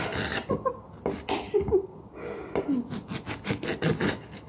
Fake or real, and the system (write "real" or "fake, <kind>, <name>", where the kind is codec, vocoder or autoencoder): real